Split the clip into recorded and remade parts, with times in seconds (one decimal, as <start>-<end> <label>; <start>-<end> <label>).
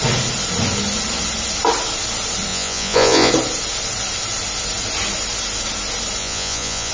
0.0-2.5 recorded; 2.5-3.3 remade; 3.3-6.2 recorded; 6.2-6.9 remade